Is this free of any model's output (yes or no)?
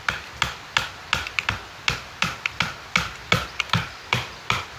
yes